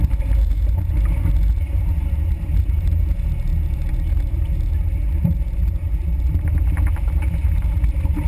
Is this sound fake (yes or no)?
yes